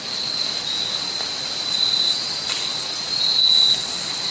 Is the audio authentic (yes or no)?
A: yes